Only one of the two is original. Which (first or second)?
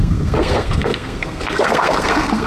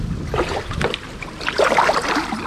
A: second